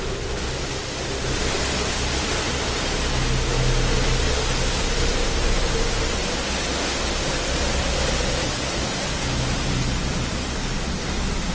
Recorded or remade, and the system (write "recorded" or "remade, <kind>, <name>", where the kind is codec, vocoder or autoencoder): recorded